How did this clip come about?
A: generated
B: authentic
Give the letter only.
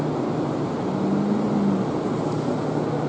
B